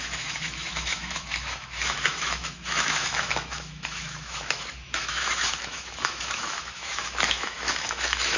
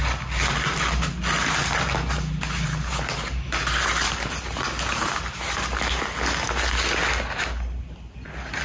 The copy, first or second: first